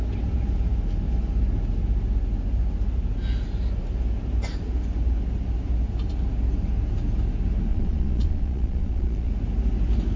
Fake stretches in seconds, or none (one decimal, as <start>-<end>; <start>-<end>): 7.7-9.3